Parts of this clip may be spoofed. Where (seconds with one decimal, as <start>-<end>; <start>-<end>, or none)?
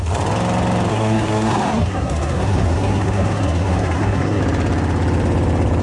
0.9-4.4